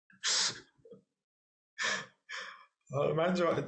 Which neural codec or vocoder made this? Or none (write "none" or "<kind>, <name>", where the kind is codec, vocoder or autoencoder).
none